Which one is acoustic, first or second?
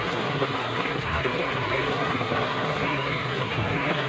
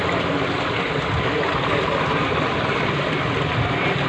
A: second